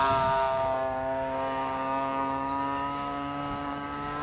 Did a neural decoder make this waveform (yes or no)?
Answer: yes